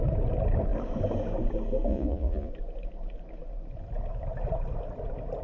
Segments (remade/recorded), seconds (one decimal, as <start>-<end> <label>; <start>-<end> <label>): 0.0-1.9 recorded; 1.9-2.5 remade; 2.5-5.4 recorded